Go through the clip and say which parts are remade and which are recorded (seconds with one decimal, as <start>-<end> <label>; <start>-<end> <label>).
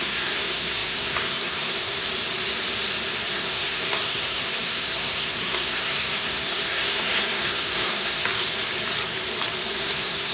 0.0-2.0 remade; 2.0-3.3 recorded; 3.3-8.2 remade; 8.2-9.7 recorded; 9.7-10.3 remade